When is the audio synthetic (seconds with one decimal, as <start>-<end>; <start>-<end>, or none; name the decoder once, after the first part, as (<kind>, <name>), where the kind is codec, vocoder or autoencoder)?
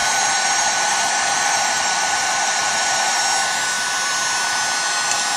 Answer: 0.0-3.2 (vocoder, BigVGAN v2)